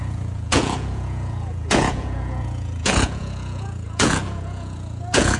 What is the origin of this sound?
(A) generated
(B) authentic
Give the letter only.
A